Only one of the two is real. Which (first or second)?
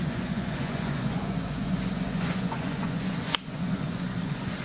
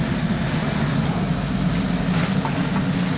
second